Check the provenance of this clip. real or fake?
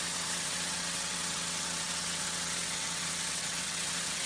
fake